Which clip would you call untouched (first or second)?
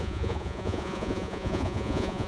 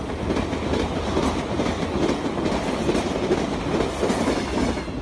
second